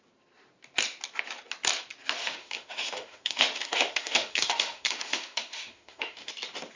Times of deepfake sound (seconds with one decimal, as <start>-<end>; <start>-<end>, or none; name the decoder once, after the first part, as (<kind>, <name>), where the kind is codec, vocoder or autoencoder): 2.2-6.3 (autoencoder, DAC-VAE)